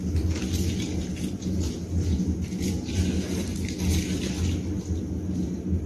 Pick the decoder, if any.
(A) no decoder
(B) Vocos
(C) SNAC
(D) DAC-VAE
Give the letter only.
A